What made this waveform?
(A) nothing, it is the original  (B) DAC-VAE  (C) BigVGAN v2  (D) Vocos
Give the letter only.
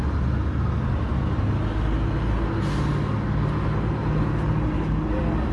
A